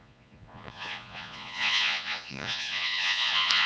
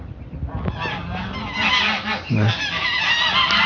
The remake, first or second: first